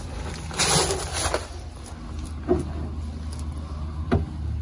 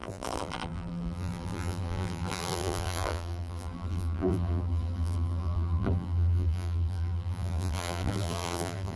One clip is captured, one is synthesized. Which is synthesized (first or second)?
second